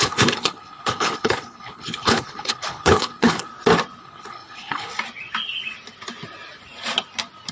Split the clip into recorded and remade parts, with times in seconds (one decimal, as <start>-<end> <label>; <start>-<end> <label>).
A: 0.0-3.5 remade; 3.5-4.0 recorded; 4.0-4.9 remade; 4.9-7.5 recorded